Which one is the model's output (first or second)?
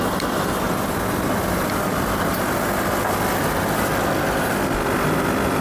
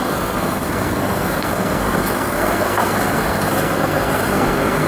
second